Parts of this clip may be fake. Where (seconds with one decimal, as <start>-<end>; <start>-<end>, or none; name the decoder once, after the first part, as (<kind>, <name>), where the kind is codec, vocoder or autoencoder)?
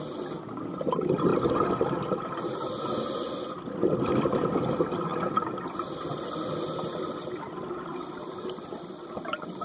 1.3-2.4 (vocoder, BigVGAN v2); 5.1-9.1